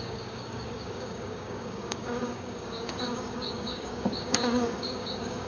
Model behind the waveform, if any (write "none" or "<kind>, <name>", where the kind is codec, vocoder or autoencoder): codec, DAC